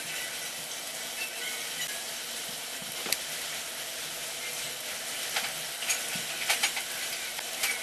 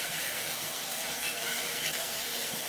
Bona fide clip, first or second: first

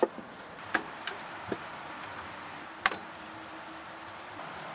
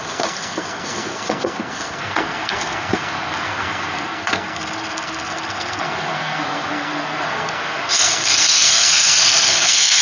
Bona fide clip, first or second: first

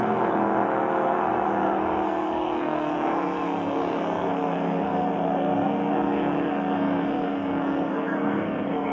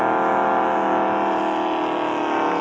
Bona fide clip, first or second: second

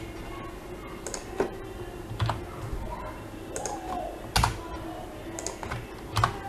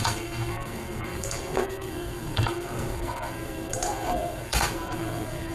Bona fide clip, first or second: first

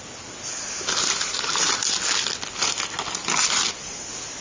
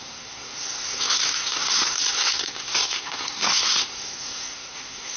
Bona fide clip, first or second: first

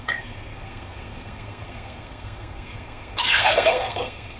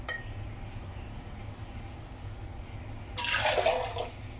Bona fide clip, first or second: second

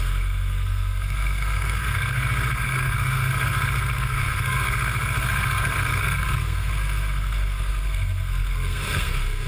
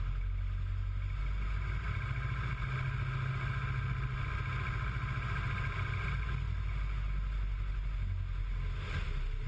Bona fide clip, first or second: second